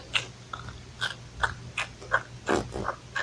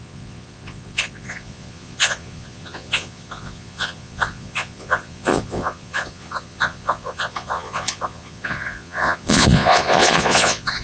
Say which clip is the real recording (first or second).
first